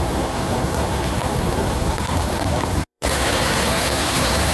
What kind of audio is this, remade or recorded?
remade